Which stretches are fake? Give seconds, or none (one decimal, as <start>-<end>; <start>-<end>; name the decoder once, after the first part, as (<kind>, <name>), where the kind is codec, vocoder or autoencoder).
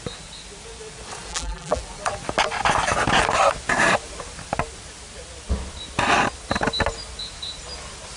1.3-1.8 (vocoder, BigVGAN v2)